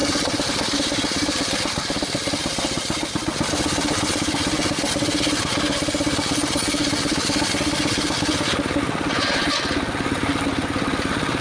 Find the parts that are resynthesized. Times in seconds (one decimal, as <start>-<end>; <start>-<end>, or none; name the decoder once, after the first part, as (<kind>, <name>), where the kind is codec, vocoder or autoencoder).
none